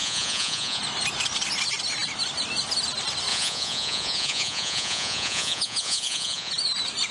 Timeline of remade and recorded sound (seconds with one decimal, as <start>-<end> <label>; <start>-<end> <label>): 0.0-0.8 remade; 0.8-3.3 recorded; 3.3-6.5 remade; 6.5-7.1 recorded